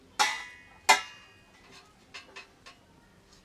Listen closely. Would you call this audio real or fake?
real